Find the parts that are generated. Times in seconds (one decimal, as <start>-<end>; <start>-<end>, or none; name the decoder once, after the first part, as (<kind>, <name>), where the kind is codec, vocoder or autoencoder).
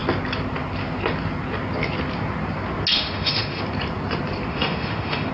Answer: 2.9-3.6 (autoencoder, DAC-VAE); 4.5-5.3